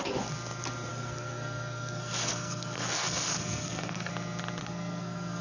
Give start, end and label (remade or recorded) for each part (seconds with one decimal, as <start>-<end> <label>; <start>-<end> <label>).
0.0-0.9 recorded; 0.9-4.1 remade; 4.1-4.6 recorded; 4.6-5.4 remade